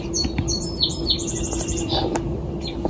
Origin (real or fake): real